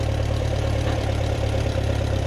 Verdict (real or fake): fake